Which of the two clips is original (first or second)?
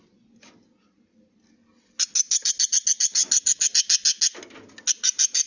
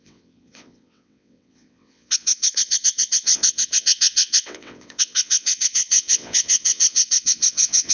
first